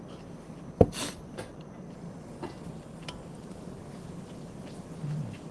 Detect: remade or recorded recorded